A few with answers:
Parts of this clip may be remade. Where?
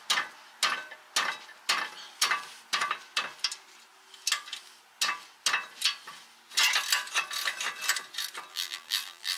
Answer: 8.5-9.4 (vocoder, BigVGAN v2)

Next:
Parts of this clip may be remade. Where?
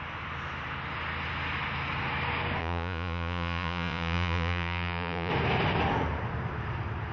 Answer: 2.6-5.3 (vocoder, Vocos)